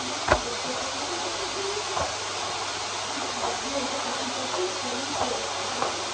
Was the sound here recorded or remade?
recorded